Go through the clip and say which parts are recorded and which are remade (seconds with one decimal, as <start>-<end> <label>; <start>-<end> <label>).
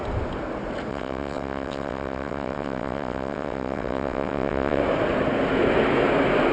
0.0-0.9 recorded; 0.9-4.8 remade; 4.8-6.5 recorded